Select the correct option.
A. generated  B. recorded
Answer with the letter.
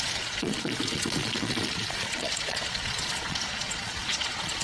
A